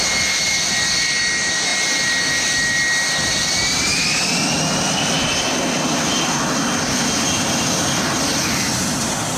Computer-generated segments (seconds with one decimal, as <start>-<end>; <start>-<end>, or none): none